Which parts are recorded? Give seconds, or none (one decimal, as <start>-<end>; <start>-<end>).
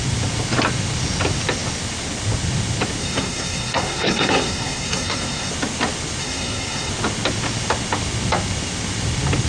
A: 0.0-3.0; 5.5-6.2; 6.9-9.5